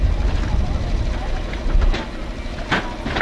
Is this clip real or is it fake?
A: real